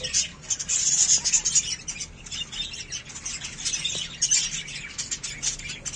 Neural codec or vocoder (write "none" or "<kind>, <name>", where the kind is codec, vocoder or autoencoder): none